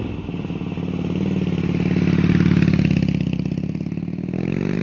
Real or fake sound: real